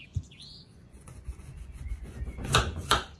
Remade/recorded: remade